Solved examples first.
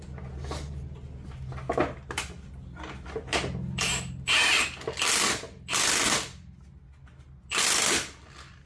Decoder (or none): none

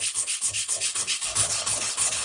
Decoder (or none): codec, HILCodec